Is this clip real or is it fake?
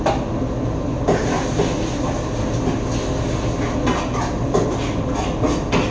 real